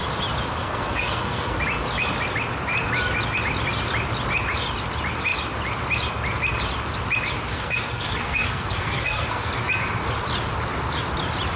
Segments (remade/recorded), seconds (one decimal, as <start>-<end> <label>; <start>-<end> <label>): 0.0-0.6 recorded; 0.6-1.6 remade; 1.6-7.5 recorded; 7.5-9.5 remade; 9.5-11.6 recorded